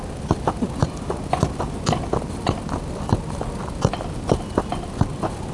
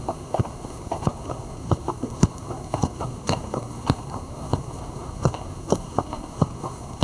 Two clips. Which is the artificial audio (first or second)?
second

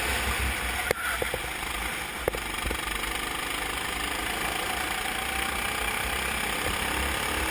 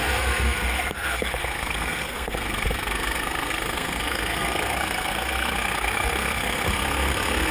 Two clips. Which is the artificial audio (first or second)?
second